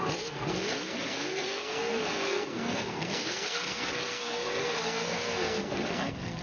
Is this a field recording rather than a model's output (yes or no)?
no